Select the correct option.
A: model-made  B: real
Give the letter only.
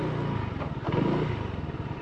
B